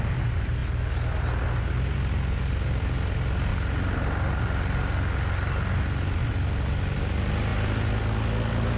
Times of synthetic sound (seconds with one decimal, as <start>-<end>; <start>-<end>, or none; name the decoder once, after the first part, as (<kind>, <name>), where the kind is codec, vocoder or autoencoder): none